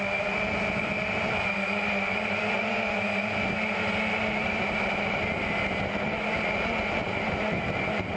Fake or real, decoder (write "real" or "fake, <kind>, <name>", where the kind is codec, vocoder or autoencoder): real